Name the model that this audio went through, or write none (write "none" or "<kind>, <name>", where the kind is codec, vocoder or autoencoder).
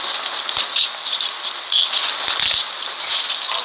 none